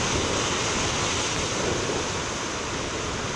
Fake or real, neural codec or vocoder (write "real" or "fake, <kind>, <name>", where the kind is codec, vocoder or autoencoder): real